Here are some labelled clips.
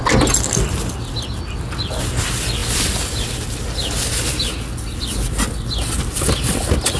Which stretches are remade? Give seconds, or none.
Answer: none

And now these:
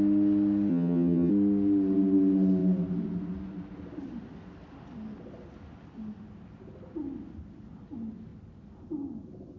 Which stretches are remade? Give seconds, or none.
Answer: 0.7-1.3 (vocoder, HiFi-GAN)

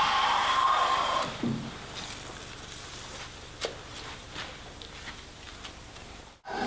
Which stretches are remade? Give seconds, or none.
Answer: 0.4-1.6 (vocoder, BigVGAN v2); 3.9-6.7

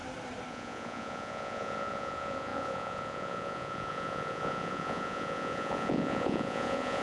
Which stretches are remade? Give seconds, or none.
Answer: 0.5-7.0 (vocoder, Vocos)

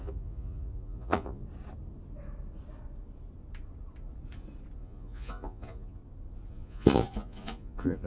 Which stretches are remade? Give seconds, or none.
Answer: 0.0-1.4 (vocoder, Vocos); 4.8-6.0; 6.5-8.1

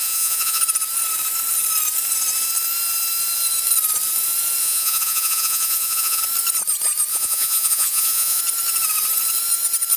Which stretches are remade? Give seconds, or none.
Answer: 0.0-0.6 (vocoder, Vocos); 4.6-6.2; 7.1-8.4